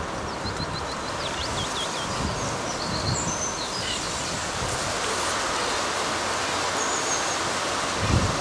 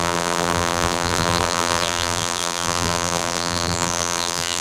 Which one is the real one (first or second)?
first